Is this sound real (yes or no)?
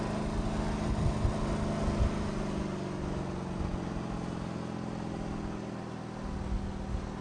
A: yes